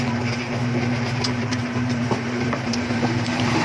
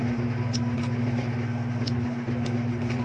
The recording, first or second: second